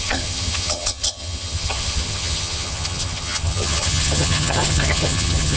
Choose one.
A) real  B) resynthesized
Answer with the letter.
B